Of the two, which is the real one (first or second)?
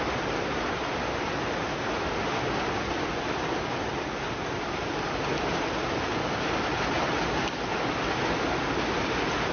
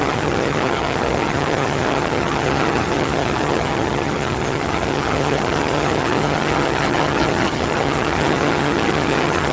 first